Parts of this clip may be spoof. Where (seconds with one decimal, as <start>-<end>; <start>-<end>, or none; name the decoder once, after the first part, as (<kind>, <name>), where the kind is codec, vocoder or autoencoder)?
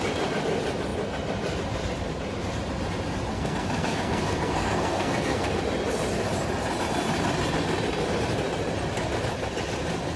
3.3-5.6 (codec, SNAC)